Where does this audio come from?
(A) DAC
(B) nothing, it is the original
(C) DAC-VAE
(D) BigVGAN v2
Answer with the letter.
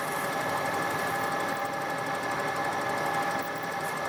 D